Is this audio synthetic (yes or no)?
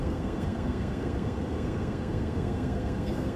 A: yes